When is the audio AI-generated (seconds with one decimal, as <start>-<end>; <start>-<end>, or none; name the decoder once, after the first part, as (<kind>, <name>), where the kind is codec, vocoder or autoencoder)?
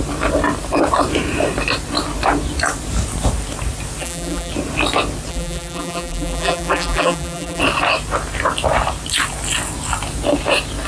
4.0-4.5 (vocoder, BigVGAN v2); 5.3-7.6